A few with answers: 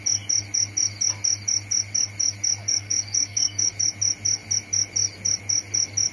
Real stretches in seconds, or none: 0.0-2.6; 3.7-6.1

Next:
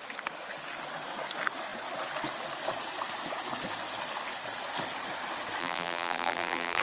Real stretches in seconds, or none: 0.0-5.6

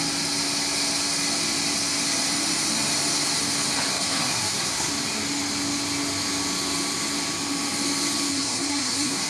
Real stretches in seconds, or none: 0.0-3.9; 4.9-8.3